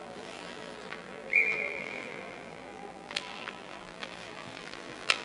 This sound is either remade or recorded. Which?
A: remade